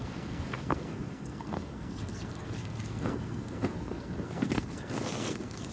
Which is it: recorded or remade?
remade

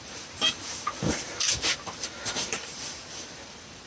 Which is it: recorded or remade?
remade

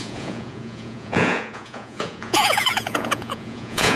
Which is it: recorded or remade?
remade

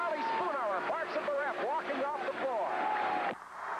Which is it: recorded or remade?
remade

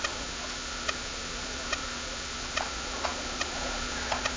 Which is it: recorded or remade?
remade